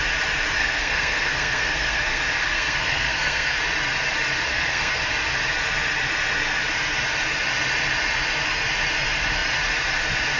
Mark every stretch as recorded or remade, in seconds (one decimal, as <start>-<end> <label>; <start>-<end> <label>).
0.0-0.6 recorded; 0.6-3.6 remade; 3.6-4.5 recorded; 4.5-5.0 remade; 5.0-10.4 recorded